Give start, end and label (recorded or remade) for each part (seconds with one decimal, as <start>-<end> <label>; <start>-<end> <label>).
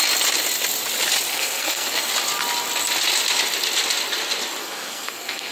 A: 0.0-1.3 recorded; 1.3-2.1 remade; 2.1-4.6 recorded; 4.6-5.5 remade